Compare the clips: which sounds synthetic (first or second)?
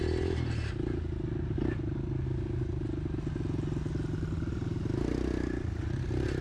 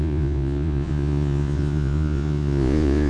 second